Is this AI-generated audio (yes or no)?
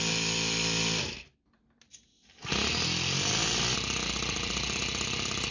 no